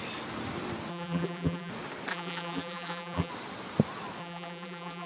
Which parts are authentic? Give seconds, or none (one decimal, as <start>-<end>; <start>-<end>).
0.0-0.9; 1.7-2.1; 3.3-4.2